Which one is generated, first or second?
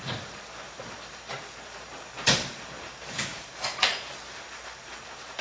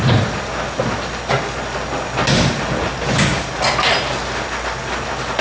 first